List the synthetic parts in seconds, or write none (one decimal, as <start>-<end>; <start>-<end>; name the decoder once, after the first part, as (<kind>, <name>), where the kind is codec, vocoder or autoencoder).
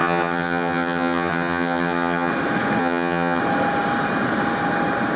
0.0-2.3 (vocoder, HiFi-GAN); 2.8-3.4